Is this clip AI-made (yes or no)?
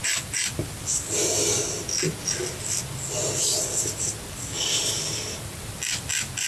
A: no